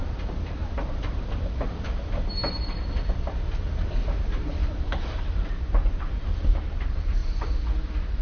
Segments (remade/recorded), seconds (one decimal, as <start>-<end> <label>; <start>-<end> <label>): 0.0-0.6 recorded; 0.6-1.7 remade; 1.7-4.6 recorded; 4.6-6.1 remade; 6.1-8.2 recorded